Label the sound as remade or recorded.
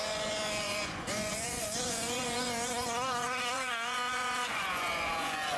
remade